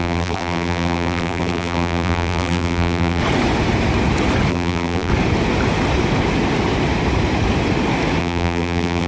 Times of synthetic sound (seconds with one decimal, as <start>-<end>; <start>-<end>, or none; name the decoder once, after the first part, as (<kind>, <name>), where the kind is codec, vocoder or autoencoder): 0.0-3.2 (vocoder, BigVGAN v2); 4.5-5.1; 8.2-9.1